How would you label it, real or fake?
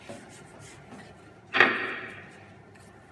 real